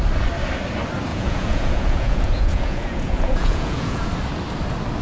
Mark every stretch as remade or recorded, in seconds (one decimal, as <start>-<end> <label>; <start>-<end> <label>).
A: 0.0-1.1 recorded; 1.1-4.1 remade; 4.1-5.0 recorded